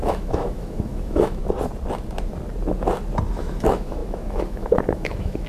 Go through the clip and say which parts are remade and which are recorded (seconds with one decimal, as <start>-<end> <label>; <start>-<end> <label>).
0.0-1.4 remade; 1.4-3.3 recorded; 3.3-5.5 remade